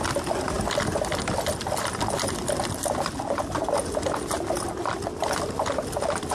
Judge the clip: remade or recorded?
recorded